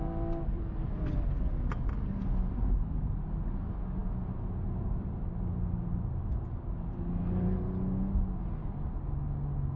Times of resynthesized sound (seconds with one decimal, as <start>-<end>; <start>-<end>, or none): 0.0-1.9